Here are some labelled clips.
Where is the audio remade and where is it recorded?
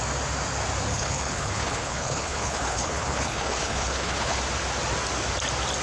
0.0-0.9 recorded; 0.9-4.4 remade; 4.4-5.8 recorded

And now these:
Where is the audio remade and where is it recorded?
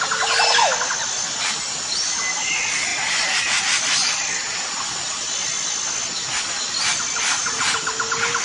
0.0-8.4 recorded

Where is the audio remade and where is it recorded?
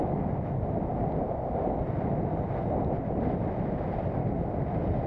0.0-5.1 recorded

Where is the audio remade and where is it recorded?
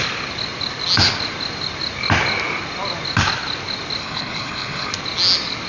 0.0-4.0 recorded; 4.0-4.9 remade; 4.9-5.7 recorded